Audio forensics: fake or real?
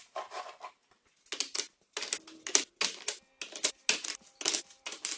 real